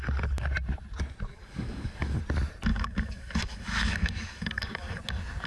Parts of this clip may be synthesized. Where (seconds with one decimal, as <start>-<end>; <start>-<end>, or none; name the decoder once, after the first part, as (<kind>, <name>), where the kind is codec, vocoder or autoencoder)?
1.3-2.2 (codec, DAC); 2.7-5.0